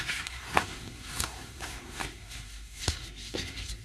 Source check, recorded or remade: remade